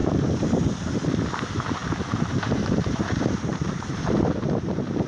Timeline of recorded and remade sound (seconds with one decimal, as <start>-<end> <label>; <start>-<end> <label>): 0.0-0.5 remade; 0.5-1.8 recorded; 1.8-4.3 remade; 4.3-5.1 recorded